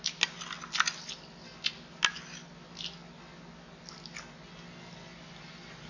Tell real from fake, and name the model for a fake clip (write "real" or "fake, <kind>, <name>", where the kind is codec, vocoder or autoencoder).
real